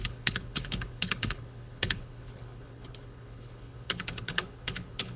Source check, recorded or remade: remade